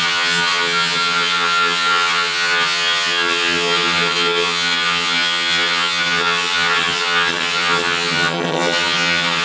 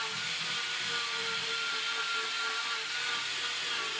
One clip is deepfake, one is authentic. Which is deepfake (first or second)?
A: first